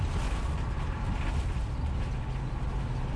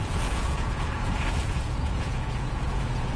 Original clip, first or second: first